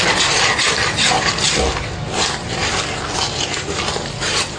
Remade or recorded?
recorded